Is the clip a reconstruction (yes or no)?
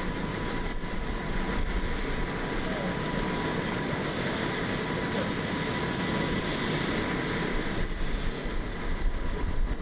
no